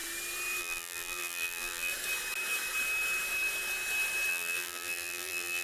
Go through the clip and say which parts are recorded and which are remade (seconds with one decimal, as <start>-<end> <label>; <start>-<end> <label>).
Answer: 0.0-0.6 recorded; 0.6-1.9 remade; 1.9-4.3 recorded; 4.3-5.6 remade